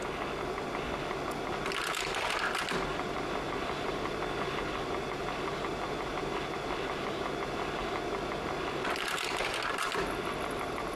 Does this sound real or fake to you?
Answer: real